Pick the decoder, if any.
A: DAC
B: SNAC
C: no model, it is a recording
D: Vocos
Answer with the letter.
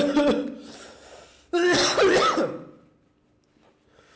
C